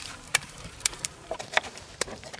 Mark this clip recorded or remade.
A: remade